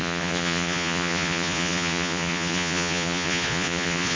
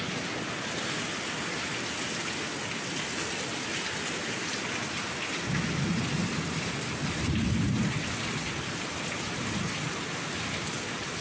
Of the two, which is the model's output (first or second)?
first